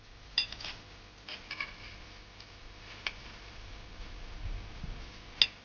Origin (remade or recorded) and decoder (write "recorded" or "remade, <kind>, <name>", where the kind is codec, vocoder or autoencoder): recorded